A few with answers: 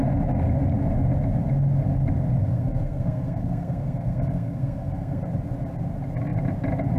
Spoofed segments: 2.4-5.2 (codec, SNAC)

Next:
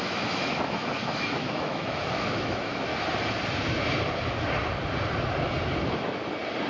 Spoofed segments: 0.0-2.9 (autoencoder, DAC-VAE)